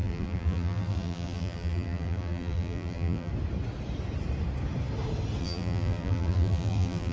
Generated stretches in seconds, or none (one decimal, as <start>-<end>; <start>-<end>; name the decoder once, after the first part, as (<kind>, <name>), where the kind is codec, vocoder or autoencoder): 0.0-3.3 (vocoder, BigVGAN v2); 5.4-7.1

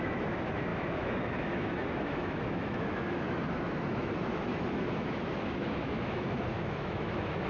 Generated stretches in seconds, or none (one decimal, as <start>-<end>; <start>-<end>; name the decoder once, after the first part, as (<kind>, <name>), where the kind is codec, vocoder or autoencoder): 0.0-7.5 (autoencoder, DAC-VAE)

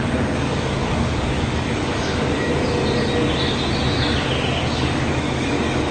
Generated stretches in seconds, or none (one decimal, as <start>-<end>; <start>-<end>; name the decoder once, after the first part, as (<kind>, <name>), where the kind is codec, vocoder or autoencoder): 0.0-2.5 (codec, DAC); 4.6-5.9

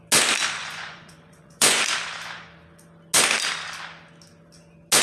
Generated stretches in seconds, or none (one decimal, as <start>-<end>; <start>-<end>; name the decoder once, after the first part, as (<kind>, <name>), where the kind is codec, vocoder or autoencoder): 0.6-1.8 (vocoder, Vocos)